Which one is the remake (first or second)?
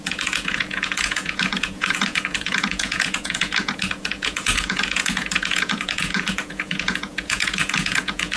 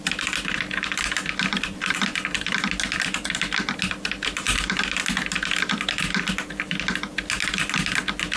first